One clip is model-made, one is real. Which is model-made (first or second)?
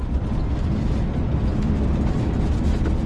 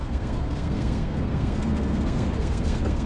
second